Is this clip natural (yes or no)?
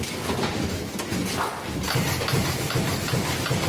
yes